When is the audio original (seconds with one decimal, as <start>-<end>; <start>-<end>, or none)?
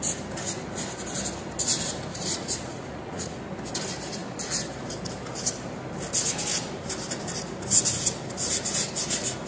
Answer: 0.0-2.1; 3.4-9.5